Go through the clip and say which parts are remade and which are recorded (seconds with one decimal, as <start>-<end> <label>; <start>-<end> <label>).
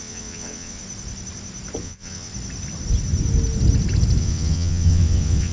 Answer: 0.0-0.8 remade; 0.8-1.8 recorded; 1.8-2.3 remade; 2.3-4.2 recorded; 4.2-5.5 remade